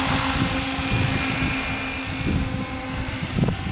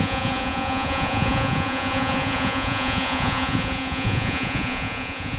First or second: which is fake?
second